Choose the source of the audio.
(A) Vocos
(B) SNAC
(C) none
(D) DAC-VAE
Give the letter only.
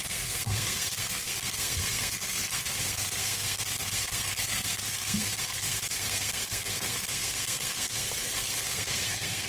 B